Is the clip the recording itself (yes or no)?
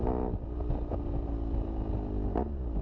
yes